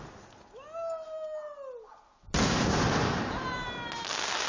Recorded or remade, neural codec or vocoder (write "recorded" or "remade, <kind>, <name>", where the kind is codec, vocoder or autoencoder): recorded